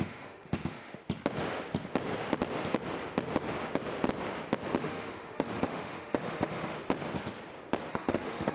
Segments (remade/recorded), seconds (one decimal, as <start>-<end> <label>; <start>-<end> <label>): 0.0-1.0 remade; 1.0-4.8 recorded; 4.8-6.7 remade; 6.7-7.9 recorded; 7.9-8.5 remade

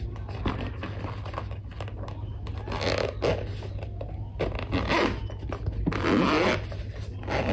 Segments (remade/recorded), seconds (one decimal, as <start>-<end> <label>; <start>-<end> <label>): 0.0-7.5 recorded

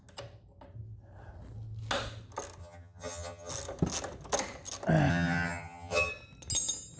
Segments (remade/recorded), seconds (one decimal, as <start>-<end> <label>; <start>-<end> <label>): 0.0-2.6 recorded; 2.6-3.5 remade; 3.5-5.1 recorded; 5.1-6.1 remade; 6.1-7.0 recorded

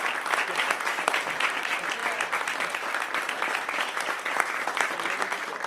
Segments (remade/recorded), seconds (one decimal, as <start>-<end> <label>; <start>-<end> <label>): 0.0-5.7 recorded

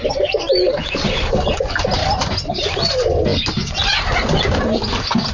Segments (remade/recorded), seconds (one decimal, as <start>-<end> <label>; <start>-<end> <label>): 0.0-5.3 recorded

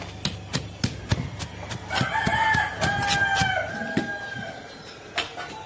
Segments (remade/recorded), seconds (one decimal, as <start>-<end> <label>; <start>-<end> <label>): 0.0-5.7 recorded

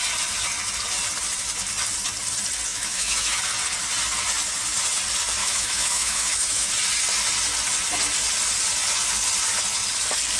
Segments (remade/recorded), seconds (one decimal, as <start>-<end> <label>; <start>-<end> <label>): 0.0-2.7 recorded; 2.7-3.4 remade; 3.4-5.4 recorded; 5.4-6.7 remade; 6.7-10.4 recorded

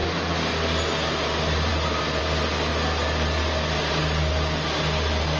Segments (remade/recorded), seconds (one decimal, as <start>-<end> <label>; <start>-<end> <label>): 0.0-5.4 recorded